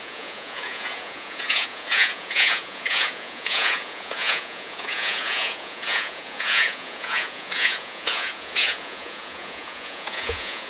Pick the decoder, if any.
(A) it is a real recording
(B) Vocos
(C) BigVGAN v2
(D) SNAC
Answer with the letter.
B